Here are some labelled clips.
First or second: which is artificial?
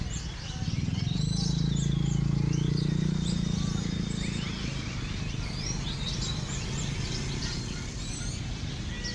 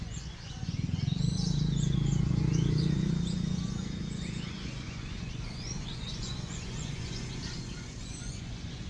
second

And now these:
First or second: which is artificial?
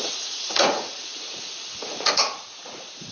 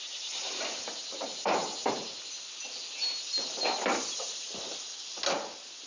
first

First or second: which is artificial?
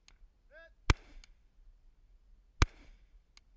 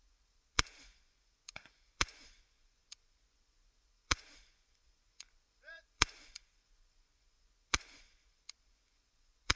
second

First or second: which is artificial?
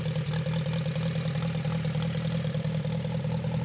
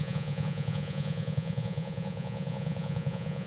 second